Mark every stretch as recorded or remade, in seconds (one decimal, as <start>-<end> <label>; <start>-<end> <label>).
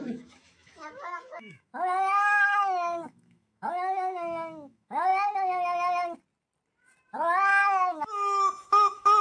0.0-5.1 remade; 5.1-7.6 recorded; 7.6-9.2 remade